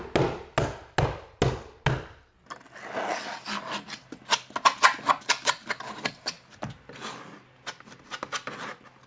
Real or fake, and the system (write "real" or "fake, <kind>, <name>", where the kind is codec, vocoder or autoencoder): real